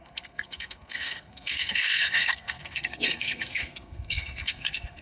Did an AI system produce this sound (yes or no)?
yes